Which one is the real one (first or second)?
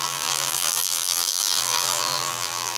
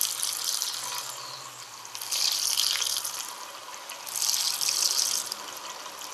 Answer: second